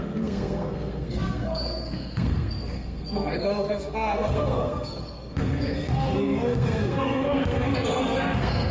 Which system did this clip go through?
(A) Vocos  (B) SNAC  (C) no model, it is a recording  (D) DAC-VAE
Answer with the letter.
B